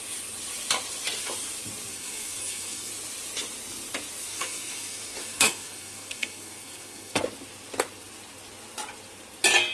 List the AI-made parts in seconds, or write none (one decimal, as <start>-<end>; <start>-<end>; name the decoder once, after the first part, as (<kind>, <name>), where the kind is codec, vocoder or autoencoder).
1.9-2.9 (codec, SNAC); 4.2-7.2